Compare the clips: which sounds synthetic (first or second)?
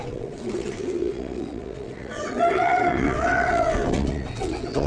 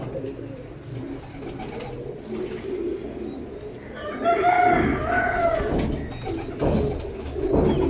first